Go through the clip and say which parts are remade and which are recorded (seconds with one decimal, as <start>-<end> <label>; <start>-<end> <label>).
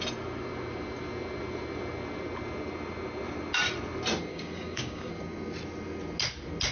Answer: 0.0-4.3 recorded; 4.3-5.1 remade; 5.1-6.7 recorded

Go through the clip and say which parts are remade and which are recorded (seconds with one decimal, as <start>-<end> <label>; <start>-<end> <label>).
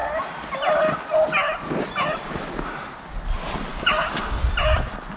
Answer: 0.0-3.7 recorded; 3.7-4.4 remade; 4.4-5.2 recorded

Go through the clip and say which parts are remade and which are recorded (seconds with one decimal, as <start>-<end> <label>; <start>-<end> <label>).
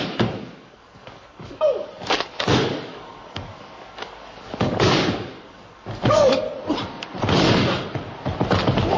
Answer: 0.0-6.4 remade; 6.4-9.0 recorded